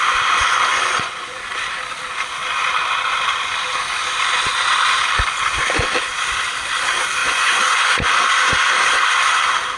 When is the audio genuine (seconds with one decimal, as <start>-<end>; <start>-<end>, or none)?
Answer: 0.0-0.7; 1.4-7.2; 8.1-9.8

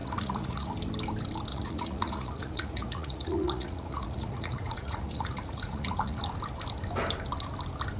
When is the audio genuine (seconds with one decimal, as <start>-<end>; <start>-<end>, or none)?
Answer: 0.7-1.5; 6.2-8.0

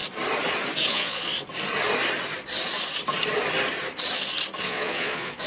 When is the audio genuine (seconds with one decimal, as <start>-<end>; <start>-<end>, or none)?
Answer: 0.0-0.9; 1.3-4.6

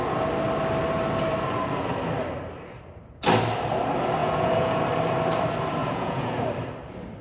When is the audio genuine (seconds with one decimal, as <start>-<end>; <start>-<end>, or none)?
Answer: 0.0-4.2; 4.8-5.8; 6.4-7.2

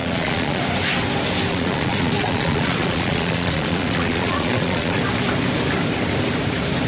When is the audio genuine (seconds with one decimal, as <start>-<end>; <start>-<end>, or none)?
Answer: 0.6-1.5; 5.0-6.9

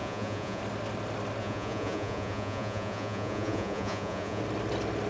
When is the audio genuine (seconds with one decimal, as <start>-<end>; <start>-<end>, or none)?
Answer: 0.6-1.4; 4.4-5.1